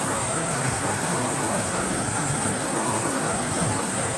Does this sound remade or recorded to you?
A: remade